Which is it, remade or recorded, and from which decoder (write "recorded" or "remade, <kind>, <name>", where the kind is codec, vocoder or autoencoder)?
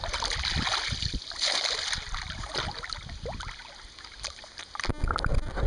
recorded